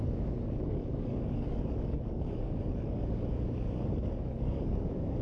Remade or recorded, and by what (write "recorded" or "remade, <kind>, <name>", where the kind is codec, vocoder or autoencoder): remade, codec, DAC